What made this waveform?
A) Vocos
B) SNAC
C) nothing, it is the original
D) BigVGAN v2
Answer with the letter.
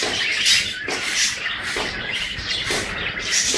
C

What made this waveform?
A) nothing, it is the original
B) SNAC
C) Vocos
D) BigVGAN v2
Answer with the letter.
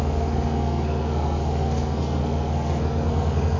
B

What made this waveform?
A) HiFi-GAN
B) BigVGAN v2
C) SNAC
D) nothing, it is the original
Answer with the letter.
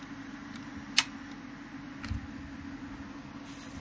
D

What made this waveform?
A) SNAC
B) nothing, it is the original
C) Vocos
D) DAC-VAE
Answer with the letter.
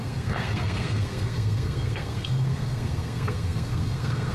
A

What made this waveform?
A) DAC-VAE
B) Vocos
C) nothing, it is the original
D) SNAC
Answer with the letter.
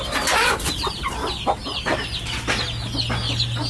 C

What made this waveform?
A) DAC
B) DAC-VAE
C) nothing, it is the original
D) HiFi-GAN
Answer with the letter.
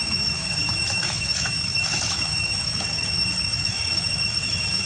B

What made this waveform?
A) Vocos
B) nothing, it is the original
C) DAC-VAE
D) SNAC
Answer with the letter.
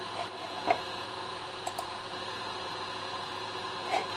A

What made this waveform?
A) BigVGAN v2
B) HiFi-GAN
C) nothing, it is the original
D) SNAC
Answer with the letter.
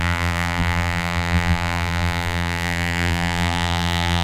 A